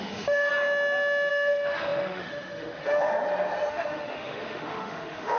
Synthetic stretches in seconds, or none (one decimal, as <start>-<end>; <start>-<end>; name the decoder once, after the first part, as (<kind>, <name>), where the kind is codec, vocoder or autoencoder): 0.0-0.5 (autoencoder, DAC-VAE); 1.3-3.1; 3.7-5.4